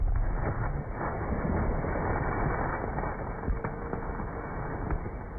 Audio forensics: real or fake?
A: real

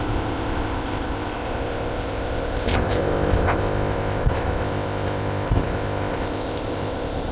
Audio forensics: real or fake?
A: fake